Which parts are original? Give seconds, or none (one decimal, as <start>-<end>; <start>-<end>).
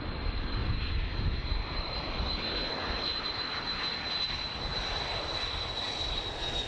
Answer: 0.0-0.6; 2.7-4.7; 6.1-6.7